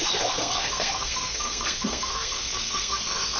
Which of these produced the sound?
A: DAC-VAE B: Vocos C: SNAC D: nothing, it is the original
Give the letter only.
C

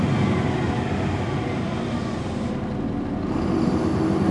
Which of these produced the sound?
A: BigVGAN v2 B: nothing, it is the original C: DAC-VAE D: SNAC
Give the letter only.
B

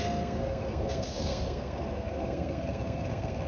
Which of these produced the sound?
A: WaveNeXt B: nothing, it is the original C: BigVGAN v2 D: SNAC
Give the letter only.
D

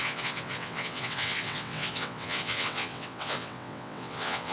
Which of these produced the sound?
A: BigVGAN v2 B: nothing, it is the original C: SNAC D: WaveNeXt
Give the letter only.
D